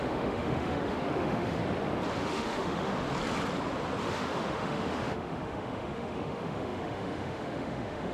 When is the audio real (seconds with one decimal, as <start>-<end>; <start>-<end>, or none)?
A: 1.6-2.2; 2.9-4.0